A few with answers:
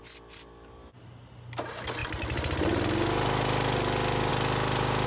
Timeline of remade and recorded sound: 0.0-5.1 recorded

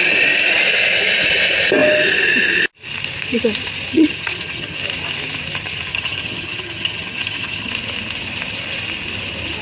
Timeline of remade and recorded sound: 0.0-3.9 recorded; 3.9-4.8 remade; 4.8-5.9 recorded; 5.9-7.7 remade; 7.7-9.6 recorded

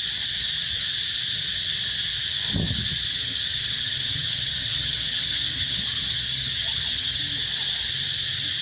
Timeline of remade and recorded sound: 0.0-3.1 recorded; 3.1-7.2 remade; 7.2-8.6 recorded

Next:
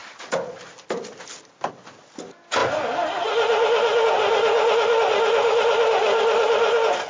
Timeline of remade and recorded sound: 0.0-7.1 recorded

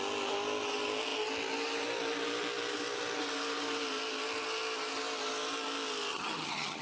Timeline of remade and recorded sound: 0.0-6.1 recorded; 6.1-6.8 remade

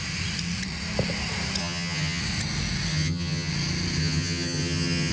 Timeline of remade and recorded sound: 0.0-1.6 recorded; 1.6-2.2 remade; 2.2-2.9 recorded; 2.9-3.5 remade; 3.5-4.0 recorded; 4.0-5.1 remade

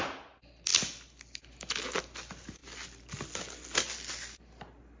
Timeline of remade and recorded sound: 0.0-5.0 recorded